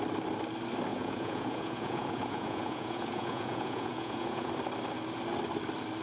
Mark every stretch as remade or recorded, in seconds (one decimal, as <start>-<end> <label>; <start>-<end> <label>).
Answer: 0.0-0.9 recorded; 0.9-4.5 remade; 4.5-6.0 recorded